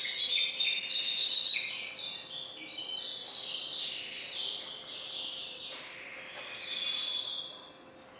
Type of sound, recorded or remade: recorded